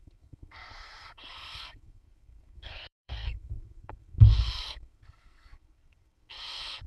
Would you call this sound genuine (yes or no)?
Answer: no